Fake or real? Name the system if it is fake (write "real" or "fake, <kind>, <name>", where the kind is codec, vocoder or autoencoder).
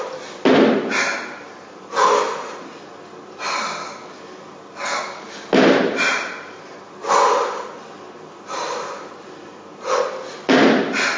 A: real